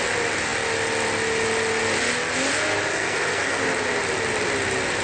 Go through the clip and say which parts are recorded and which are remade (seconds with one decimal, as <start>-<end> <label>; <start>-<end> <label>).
0.0-2.9 recorded; 2.9-3.6 remade; 3.6-5.0 recorded